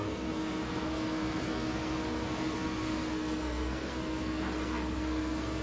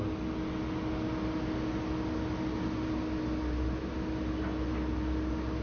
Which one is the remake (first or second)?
first